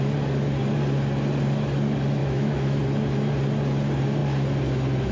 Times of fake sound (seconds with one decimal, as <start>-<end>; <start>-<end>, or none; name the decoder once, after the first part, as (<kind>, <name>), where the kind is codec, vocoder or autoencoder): 2.2-2.8 (autoencoder, DAC-VAE)